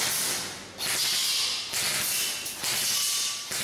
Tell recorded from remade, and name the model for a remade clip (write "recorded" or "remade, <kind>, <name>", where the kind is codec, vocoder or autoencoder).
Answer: recorded